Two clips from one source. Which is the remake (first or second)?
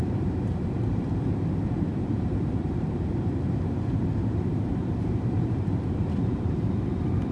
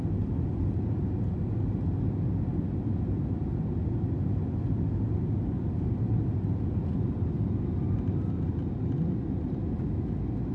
first